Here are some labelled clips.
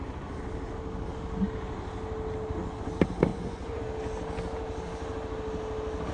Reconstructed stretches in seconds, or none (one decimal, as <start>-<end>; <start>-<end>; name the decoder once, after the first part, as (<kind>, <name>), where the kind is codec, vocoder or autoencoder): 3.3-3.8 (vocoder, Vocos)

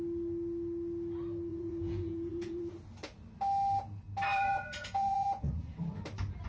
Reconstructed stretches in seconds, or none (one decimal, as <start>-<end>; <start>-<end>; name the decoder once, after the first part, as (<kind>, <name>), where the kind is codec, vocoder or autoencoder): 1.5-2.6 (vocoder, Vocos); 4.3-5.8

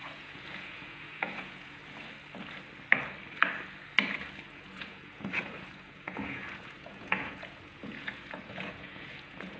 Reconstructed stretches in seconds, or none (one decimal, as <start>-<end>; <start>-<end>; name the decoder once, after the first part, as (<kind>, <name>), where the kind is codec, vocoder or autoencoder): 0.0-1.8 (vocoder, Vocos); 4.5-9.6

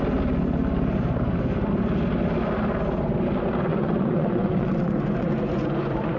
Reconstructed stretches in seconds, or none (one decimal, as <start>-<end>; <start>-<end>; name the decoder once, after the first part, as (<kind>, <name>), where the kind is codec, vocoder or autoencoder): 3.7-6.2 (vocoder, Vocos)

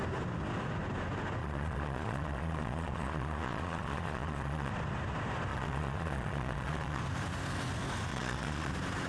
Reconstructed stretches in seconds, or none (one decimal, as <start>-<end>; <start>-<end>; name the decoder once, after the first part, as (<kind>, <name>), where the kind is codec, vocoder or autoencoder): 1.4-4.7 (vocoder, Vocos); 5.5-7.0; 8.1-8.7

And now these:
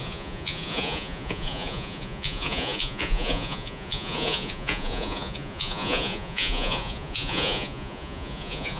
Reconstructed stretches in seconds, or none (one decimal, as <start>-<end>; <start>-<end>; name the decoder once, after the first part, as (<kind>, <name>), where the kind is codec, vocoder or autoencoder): 0.0-8.8 (vocoder, Vocos)

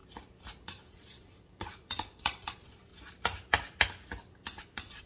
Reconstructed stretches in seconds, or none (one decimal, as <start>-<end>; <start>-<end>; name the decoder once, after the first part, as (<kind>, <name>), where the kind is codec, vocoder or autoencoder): 0.9-2.9 (vocoder, Vocos); 4.6-5.1

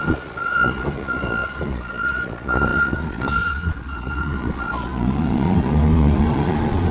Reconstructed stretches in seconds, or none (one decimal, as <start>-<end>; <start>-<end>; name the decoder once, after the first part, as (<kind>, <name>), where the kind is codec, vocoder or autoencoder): 0.0-6.9 (vocoder, Vocos)